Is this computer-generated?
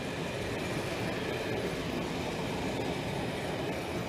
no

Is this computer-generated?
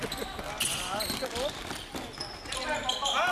no